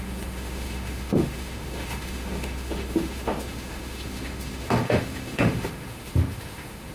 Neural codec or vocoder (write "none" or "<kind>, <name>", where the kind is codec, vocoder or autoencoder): autoencoder, DAC-VAE